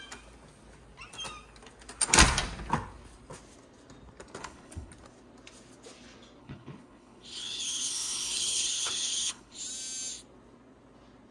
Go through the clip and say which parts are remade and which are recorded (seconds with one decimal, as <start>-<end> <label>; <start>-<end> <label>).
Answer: 0.0-4.4 recorded; 4.4-4.9 remade; 4.9-6.4 recorded; 6.4-9.6 remade; 9.6-11.3 recorded